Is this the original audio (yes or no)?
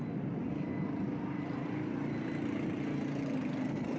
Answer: yes